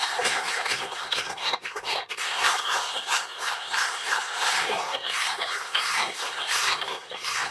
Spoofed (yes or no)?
yes